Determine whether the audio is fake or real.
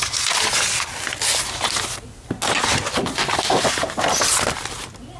real